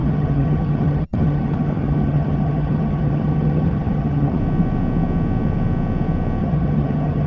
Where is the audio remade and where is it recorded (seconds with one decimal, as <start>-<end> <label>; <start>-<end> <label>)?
0.0-4.4 remade; 4.4-6.4 recorded; 6.4-7.3 remade